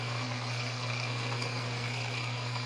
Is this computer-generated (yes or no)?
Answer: yes